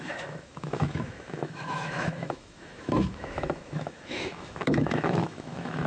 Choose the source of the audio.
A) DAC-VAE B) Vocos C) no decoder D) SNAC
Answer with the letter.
A